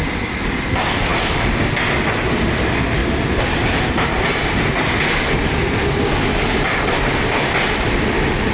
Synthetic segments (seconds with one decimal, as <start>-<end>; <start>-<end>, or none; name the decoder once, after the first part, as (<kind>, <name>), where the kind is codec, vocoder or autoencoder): 0.0-1.1 (vocoder, BigVGAN v2); 2.5-3.0; 6.9-8.5